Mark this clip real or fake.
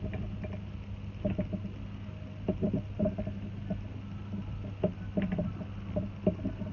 real